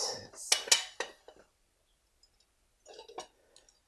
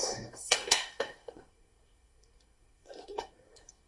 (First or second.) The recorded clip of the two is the first